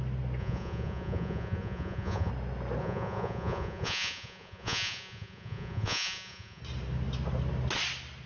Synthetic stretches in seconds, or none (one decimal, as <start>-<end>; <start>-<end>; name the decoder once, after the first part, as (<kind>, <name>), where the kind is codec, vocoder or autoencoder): 0.4-2.3 (vocoder, Vocos); 2.8-6.6